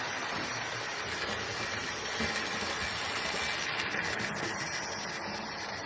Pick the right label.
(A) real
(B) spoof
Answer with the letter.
A